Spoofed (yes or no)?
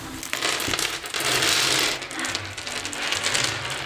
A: no